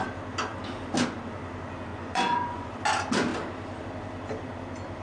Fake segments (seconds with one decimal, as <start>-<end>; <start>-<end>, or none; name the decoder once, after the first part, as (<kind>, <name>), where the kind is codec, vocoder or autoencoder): 1.9-2.7 (vocoder, Vocos)